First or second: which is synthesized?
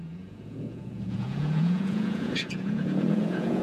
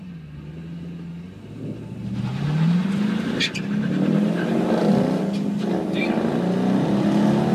first